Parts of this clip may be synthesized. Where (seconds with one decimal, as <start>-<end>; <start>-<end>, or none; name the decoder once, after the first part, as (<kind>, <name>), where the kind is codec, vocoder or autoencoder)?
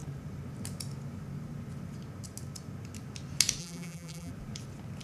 3.6-4.3 (vocoder, BigVGAN v2)